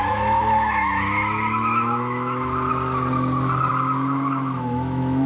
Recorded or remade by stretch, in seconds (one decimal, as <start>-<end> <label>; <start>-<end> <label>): 0.0-2.7 remade; 2.7-3.7 recorded; 3.7-5.3 remade